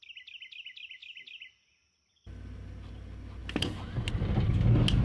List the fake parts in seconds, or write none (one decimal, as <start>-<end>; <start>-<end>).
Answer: none